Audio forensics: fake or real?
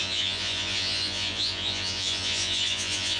fake